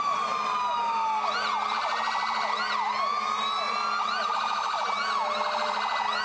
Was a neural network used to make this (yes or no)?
no